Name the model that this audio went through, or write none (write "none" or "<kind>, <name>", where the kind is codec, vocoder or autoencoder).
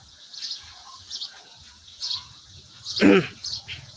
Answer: vocoder, Vocos